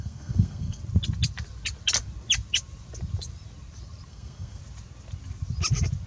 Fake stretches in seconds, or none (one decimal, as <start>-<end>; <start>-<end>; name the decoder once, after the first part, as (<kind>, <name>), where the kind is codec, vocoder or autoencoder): 0.0-0.8 (codec, SNAC); 4.1-4.6